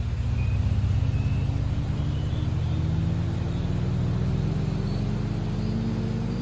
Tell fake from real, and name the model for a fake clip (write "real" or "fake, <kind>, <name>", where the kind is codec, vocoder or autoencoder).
real